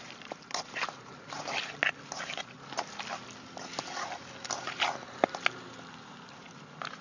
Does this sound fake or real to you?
real